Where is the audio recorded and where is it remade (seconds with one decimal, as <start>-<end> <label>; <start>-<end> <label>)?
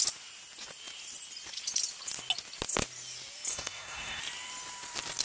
0.0-3.5 recorded; 3.5-4.2 remade; 4.2-5.2 recorded